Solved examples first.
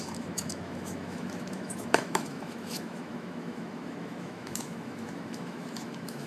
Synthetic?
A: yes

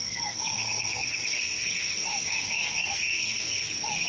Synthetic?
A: yes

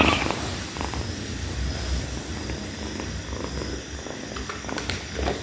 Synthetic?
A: no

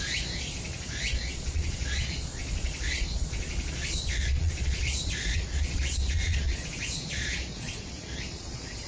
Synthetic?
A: yes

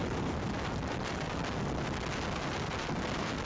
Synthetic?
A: no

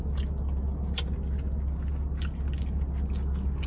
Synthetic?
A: no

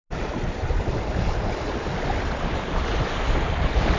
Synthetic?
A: no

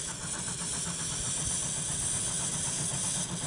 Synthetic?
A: no